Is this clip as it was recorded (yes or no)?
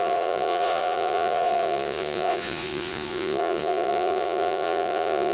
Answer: no